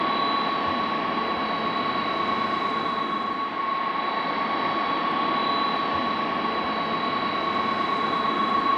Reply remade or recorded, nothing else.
recorded